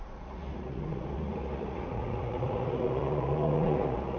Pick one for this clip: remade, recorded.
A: remade